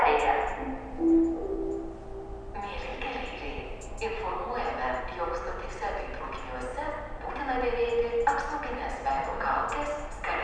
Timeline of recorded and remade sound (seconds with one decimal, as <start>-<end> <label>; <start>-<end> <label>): 0.0-10.4 recorded